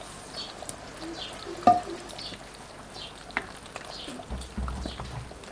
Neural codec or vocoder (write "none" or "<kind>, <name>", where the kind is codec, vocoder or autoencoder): none